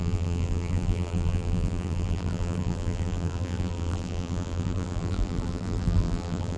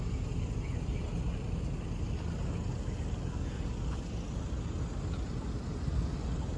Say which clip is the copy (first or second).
first